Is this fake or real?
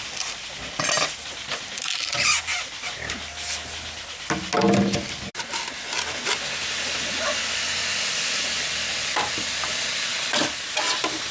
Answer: real